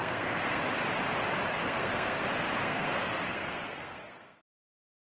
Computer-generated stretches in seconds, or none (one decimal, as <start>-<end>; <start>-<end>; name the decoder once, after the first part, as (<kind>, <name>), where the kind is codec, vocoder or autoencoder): 0.0-0.6 (codec, SNAC); 1.6-2.2; 2.6-4.4